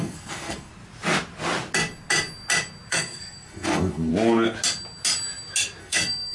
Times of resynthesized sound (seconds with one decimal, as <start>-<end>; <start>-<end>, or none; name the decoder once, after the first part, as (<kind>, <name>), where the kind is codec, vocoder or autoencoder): 0.0-0.7 (codec, SNAC); 2.9-4.1; 5.8-6.3